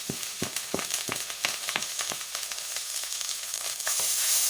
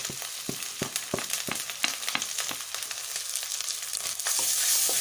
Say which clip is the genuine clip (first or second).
second